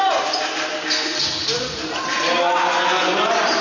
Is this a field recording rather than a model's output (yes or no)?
yes